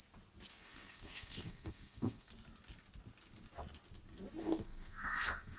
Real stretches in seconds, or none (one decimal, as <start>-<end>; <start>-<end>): 0.0-0.5; 2.3-4.4